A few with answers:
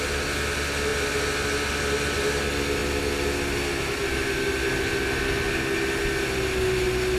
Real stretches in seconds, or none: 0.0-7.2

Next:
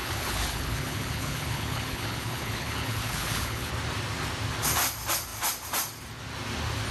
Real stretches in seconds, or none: 3.7-6.9

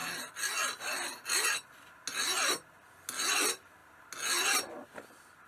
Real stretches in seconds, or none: 0.0-5.5